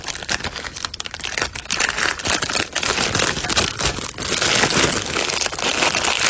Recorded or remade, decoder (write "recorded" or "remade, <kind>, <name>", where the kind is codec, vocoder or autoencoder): recorded